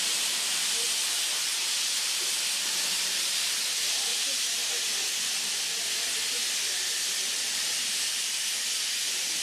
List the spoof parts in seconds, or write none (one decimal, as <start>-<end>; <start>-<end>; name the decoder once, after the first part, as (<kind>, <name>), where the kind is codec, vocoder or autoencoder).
4.1-4.7 (vocoder, BigVGAN v2)